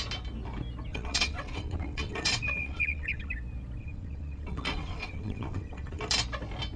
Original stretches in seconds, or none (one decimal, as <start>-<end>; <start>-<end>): 0.0-0.9; 3.3-3.8; 6.0-6.8